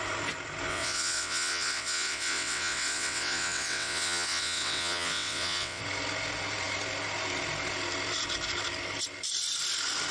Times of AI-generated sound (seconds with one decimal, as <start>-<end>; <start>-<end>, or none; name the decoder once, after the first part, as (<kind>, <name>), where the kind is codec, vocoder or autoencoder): 0.7-5.8 (vocoder, WaveNeXt)